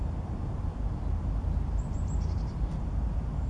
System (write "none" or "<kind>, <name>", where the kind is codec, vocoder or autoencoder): none